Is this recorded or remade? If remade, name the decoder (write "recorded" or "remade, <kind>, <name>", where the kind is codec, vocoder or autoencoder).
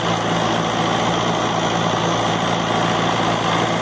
recorded